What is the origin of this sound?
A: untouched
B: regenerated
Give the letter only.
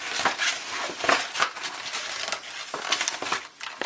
A